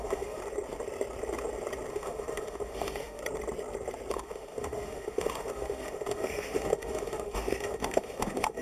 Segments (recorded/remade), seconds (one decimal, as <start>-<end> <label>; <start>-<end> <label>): 0.0-0.4 remade; 0.4-1.9 recorded; 1.9-3.2 remade; 3.2-4.1 recorded; 4.1-8.6 remade